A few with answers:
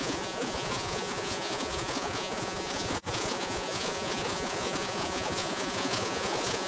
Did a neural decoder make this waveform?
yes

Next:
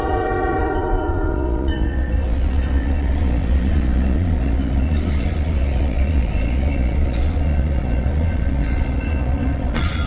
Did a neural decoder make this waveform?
yes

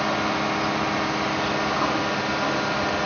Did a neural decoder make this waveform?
no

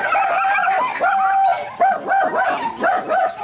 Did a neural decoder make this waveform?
no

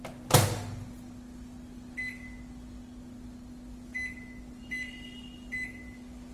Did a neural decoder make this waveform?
no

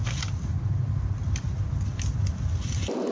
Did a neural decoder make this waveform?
no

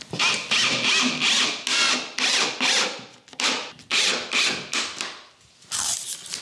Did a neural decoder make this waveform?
no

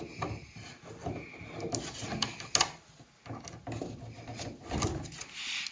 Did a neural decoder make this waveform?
no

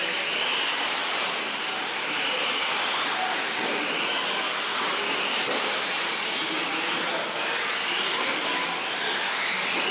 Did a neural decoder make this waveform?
no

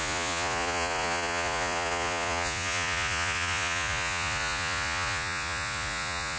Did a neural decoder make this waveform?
yes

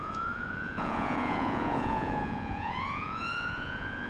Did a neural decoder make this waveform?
yes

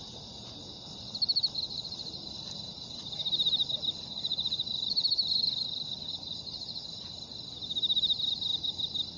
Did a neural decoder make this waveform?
no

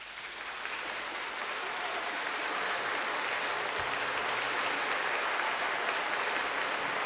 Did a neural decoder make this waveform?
no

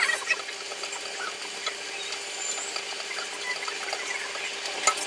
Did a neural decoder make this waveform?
no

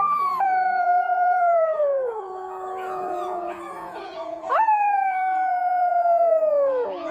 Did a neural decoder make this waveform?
yes